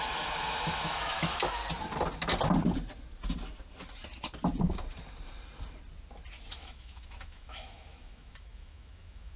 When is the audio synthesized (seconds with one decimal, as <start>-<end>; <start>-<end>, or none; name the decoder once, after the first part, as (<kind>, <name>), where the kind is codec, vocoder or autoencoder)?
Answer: 0.0-1.6 (autoencoder, DAC-VAE); 6.5-9.4

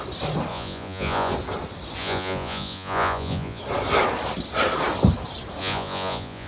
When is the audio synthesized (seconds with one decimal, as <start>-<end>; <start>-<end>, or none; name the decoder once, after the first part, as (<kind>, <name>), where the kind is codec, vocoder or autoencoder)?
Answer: 0.5-1.3 (vocoder, Vocos); 2.0-3.6; 5.6-6.5

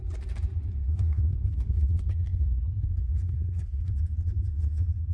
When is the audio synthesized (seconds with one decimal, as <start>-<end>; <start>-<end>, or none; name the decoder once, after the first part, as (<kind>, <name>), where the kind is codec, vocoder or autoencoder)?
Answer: 0.8-3.9 (codec, SNAC)

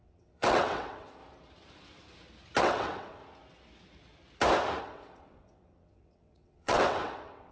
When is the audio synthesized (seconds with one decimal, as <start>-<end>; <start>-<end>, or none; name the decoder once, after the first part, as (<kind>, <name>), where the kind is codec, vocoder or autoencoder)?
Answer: 0.0-1.2 (vocoder, WaveNeXt); 2.6-3.2; 4.8-7.5

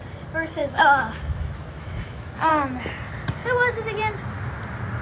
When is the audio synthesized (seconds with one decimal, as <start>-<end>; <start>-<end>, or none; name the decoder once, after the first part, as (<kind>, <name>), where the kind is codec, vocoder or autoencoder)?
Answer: 0.6-2.5 (autoencoder, DAC-VAE)

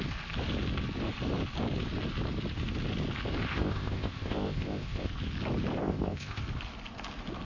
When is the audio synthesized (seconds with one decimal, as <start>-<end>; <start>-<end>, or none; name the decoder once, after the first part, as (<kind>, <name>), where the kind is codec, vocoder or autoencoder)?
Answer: 3.5-5.1 (codec, ZipCodec); 5.8-6.4